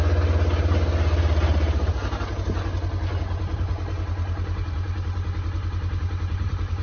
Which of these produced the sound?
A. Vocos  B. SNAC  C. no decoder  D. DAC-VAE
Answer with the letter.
C